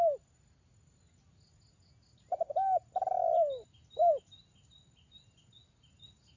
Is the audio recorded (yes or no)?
yes